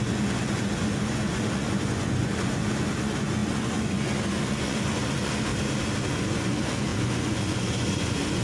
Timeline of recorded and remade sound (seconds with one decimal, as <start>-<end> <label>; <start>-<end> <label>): 0.0-5.5 remade; 5.5-6.1 recorded; 6.1-8.4 remade